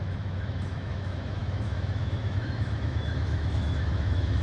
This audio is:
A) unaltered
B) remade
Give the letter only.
B